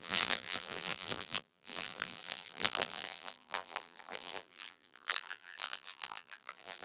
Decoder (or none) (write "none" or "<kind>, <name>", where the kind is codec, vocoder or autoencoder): vocoder, BigVGAN v2